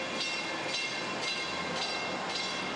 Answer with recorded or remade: recorded